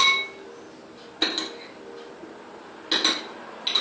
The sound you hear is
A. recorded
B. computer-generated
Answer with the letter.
A